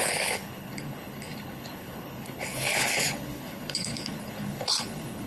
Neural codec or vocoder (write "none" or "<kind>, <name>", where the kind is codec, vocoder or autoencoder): codec, HILCodec